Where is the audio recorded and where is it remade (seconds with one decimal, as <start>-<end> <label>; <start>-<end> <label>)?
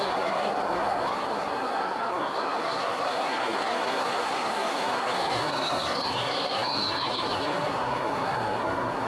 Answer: 0.0-9.1 remade